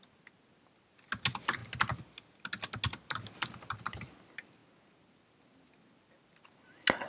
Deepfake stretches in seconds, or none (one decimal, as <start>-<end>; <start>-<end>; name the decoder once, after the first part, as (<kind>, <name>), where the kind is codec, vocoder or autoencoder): none